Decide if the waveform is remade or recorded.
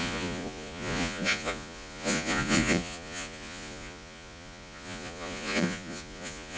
remade